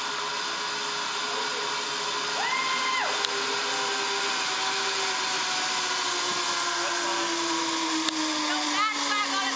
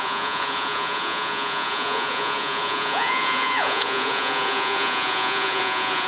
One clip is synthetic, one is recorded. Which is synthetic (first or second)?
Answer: second